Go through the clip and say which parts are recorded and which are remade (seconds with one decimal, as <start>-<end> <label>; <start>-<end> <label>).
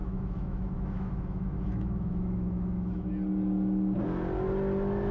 0.0-3.1 remade; 3.1-5.1 recorded